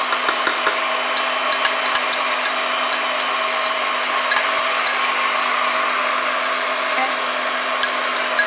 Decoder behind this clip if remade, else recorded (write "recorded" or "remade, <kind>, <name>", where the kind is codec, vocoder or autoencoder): recorded